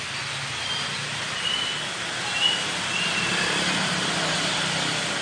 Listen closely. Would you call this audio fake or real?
real